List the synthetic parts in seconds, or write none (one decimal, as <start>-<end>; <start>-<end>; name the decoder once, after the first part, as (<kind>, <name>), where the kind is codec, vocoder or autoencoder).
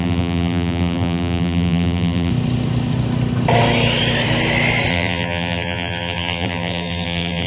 0.0-2.3 (vocoder, BigVGAN v2); 4.9-7.5